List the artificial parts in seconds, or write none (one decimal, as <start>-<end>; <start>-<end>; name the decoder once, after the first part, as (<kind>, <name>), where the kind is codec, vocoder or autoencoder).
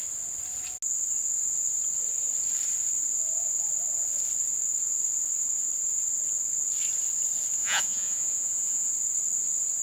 7.6-8.9 (vocoder, Vocos)